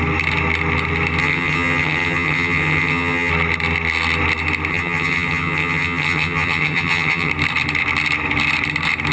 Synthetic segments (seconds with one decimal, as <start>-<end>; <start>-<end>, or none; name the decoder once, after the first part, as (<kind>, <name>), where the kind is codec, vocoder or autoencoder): 1.2-3.3 (vocoder, HiFi-GAN); 4.7-7.3